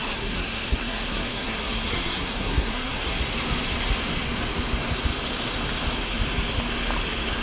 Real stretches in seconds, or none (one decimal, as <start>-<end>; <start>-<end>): 3.2-7.4